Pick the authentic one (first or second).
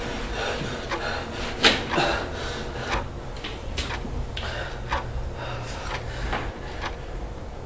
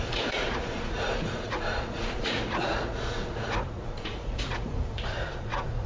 first